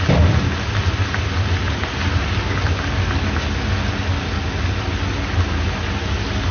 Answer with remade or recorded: recorded